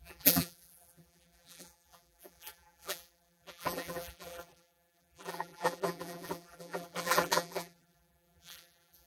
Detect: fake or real fake